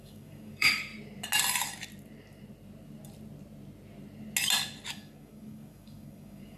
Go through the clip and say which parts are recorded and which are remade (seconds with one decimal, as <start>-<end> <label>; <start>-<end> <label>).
0.0-0.9 remade; 0.9-4.9 recorded; 4.9-6.6 remade